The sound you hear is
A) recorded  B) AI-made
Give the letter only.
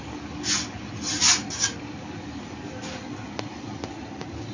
A